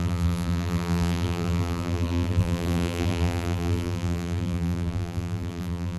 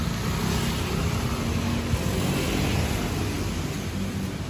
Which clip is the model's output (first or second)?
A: first